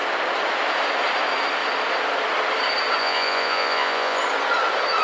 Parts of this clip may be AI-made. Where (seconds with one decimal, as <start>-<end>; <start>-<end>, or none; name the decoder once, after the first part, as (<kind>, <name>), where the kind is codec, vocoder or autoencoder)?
3.0-4.2 (vocoder, Vocos)